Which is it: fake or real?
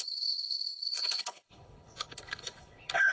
fake